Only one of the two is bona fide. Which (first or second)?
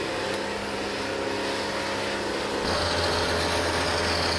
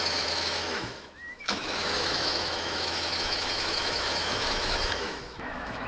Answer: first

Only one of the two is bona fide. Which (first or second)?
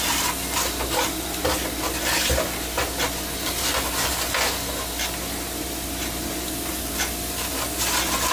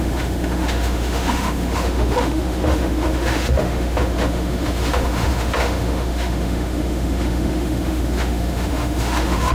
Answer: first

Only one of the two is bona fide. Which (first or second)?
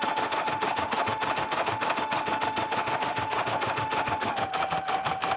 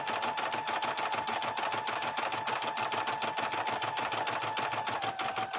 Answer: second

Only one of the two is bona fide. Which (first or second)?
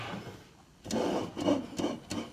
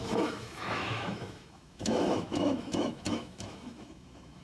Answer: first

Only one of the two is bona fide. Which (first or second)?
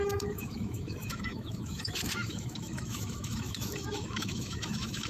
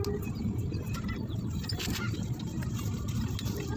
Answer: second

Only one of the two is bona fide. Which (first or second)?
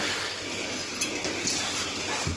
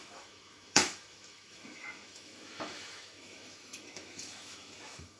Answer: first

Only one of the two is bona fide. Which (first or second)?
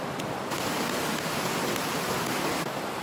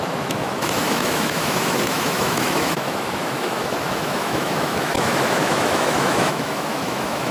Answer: first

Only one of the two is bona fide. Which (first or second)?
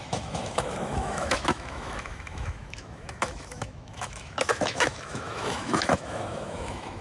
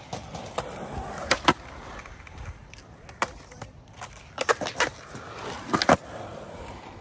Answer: second